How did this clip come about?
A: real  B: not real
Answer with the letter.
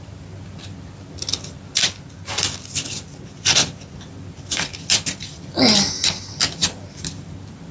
A